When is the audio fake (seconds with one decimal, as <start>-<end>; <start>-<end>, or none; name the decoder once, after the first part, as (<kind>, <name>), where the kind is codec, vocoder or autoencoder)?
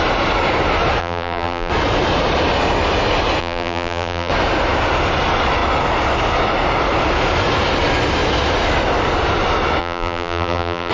1.0-1.7 (vocoder, BigVGAN v2); 3.4-4.3; 9.8-10.9